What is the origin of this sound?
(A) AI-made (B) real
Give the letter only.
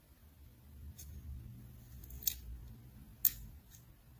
B